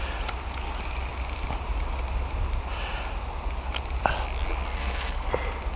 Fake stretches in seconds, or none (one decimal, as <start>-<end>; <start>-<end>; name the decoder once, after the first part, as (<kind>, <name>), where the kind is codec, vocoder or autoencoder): 4.6-5.3 (codec, SNAC)